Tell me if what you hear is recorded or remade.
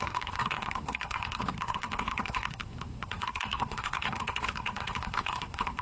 remade